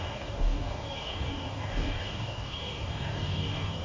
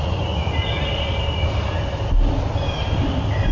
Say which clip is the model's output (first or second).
first